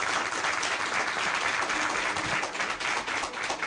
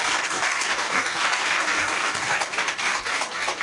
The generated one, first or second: second